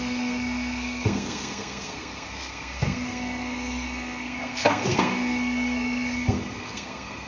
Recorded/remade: remade